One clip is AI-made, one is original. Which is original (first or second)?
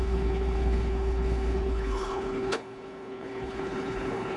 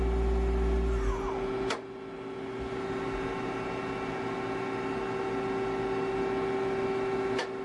second